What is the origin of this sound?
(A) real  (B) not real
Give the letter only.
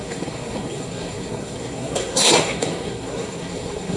B